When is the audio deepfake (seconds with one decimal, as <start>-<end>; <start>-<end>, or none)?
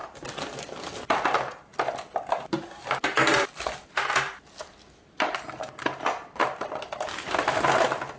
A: 6.4-7.5